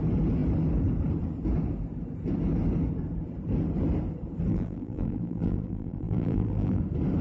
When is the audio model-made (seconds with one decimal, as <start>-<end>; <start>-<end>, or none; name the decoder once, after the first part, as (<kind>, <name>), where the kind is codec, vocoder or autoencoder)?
4.5-6.8 (vocoder, BigVGAN v2)